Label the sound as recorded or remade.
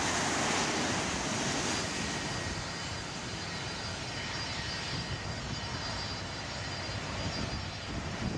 recorded